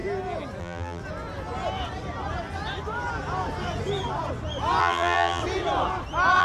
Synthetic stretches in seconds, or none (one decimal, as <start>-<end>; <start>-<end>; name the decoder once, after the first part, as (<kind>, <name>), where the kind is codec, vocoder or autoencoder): 0.6-1.0 (vocoder, BigVGAN v2); 4.8-5.4